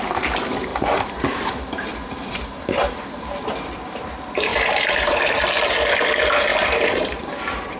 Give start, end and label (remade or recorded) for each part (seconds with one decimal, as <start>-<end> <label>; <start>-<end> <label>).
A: 0.0-0.7 recorded; 0.7-1.7 remade; 1.7-4.5 recorded; 4.5-5.3 remade; 5.3-6.5 recorded; 6.5-7.8 remade